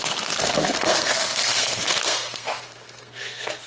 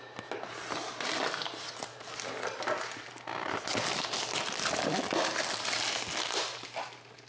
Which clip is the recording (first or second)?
second